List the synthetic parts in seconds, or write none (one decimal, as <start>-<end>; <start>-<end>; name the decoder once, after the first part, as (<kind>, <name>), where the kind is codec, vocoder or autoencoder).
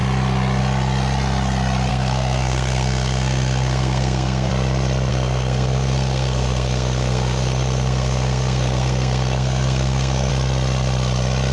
1.9-4.5 (codec, SNAC); 5.1-10.3